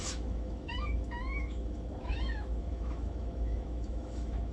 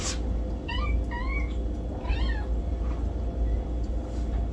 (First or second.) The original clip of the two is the second